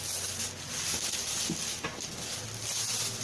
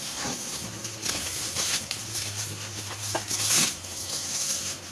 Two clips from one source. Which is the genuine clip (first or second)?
first